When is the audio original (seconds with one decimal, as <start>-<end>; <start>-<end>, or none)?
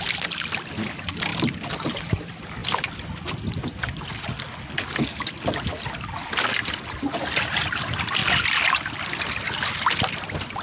0.0-10.6